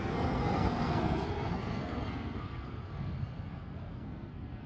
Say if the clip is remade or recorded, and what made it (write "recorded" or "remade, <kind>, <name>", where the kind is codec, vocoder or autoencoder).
remade, codec, SNAC